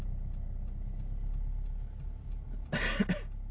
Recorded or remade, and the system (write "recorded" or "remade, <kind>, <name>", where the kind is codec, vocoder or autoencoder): recorded